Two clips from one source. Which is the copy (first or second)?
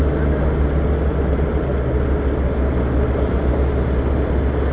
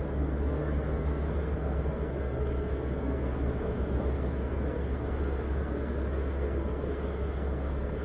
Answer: second